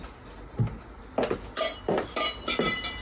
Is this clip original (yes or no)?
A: yes